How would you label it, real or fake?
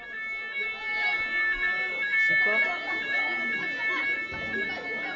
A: real